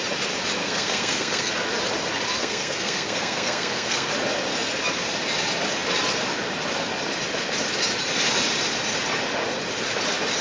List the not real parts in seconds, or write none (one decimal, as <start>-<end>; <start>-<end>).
0.6-1.5; 2.4-4.1